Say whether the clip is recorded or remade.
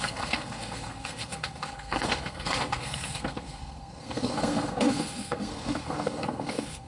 remade